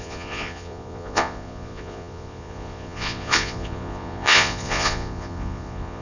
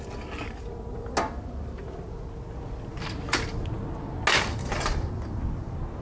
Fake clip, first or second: first